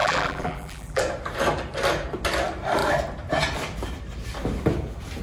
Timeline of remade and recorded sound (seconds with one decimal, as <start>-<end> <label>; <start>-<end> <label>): 0.0-1.0 remade; 1.0-5.2 recorded

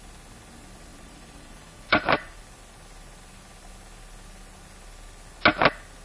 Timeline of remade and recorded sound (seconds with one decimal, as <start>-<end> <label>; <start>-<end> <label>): 0.0-0.9 recorded; 0.9-2.4 remade; 2.4-6.0 recorded

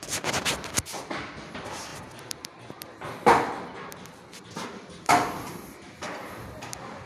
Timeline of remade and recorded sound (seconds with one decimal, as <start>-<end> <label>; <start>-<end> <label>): 0.0-7.1 recorded

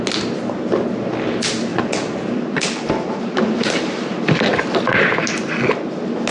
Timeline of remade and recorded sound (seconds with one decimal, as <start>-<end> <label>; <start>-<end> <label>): 0.0-1.7 recorded; 1.7-4.2 remade; 4.2-6.3 recorded

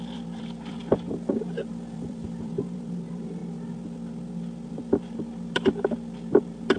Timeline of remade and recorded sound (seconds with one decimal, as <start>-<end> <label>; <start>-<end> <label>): 0.0-0.8 remade; 0.8-1.7 recorded; 1.7-3.4 remade; 3.4-4.7 recorded; 4.7-6.8 remade